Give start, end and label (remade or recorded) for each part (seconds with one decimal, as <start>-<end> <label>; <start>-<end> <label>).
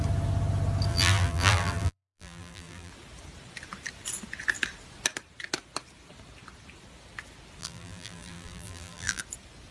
0.0-0.9 recorded; 0.9-2.9 remade; 2.9-7.6 recorded; 7.6-9.2 remade; 9.2-9.7 recorded